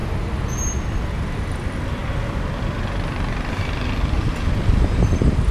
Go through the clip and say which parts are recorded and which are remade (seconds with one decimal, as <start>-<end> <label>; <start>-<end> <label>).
0.0-1.3 recorded; 1.3-5.5 remade